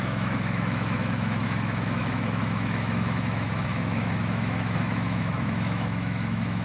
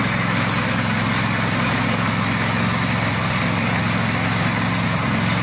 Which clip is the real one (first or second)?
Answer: second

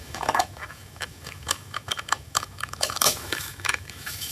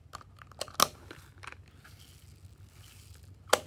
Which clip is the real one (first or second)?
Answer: second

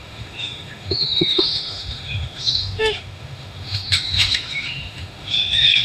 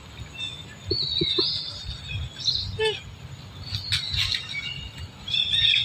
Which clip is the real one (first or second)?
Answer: second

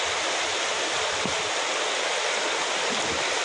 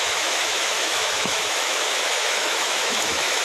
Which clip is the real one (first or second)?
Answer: first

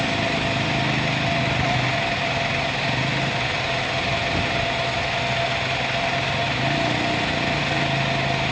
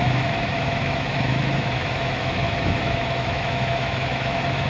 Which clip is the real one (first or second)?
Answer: first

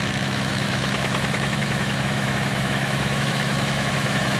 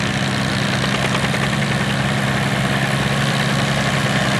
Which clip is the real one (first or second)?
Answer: second